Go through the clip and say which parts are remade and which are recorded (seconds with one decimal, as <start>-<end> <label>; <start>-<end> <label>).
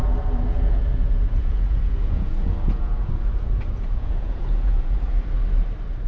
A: 0.0-5.1 remade; 5.1-6.1 recorded